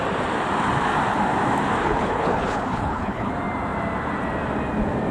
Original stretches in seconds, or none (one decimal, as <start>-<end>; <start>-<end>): 0.0-1.8; 3.3-5.1